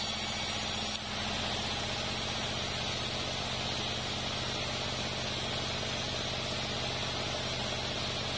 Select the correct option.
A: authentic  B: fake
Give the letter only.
A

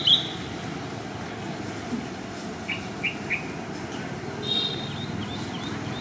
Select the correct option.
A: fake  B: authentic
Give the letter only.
B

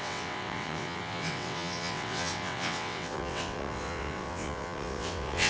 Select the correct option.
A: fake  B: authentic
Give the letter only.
A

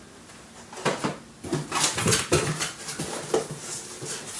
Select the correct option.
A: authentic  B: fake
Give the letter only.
A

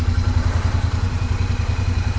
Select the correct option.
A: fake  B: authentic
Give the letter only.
A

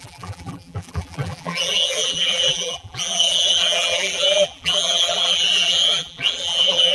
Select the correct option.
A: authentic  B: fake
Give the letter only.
B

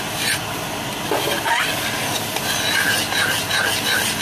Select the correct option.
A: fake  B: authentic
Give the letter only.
B